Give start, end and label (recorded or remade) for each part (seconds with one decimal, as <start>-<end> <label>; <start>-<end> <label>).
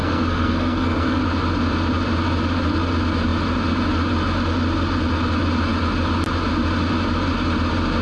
0.0-1.2 remade; 1.2-8.0 recorded